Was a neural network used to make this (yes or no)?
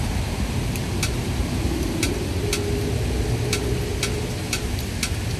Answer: no